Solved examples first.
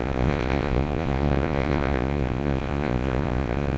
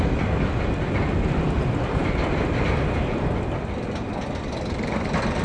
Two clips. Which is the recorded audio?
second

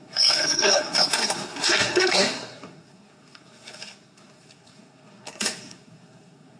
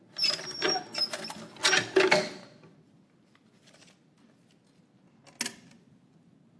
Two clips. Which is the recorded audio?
second